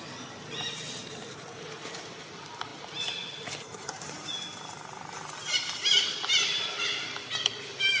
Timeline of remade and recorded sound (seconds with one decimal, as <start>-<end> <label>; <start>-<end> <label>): 0.0-8.0 recorded